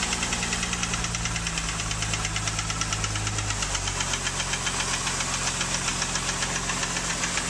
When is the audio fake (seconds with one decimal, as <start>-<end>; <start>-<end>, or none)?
none